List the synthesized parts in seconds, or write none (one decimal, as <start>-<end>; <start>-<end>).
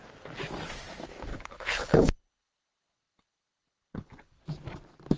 1.3-4.4